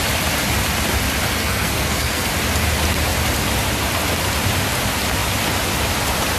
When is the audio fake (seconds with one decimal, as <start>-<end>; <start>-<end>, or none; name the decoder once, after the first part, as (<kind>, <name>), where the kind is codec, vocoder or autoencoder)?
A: 1.4-2.3 (codec, SNAC)